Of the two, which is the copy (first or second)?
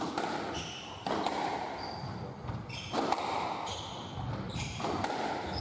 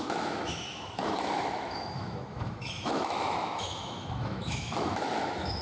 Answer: second